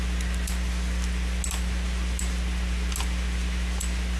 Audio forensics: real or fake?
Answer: real